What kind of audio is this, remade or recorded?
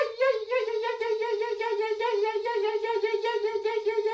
recorded